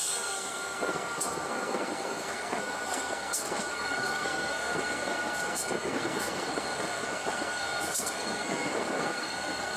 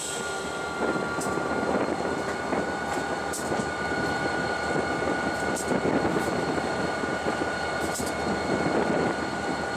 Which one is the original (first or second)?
second